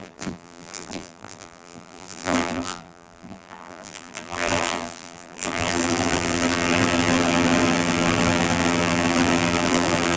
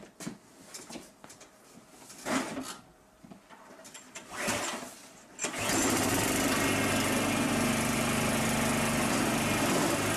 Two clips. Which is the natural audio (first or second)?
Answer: second